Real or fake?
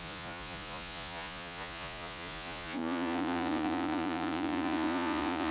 fake